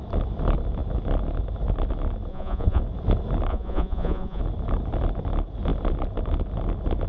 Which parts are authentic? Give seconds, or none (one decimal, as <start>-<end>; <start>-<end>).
0.0-2.3; 2.8-3.5; 4.4-7.1